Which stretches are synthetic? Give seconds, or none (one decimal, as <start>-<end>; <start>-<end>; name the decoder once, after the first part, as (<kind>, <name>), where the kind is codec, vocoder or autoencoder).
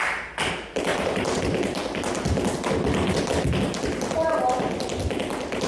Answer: 0.9-1.4 (vocoder, BigVGAN v2)